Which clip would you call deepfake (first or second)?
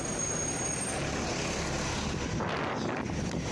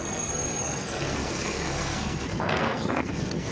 second